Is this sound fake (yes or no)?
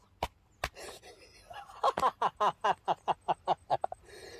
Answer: no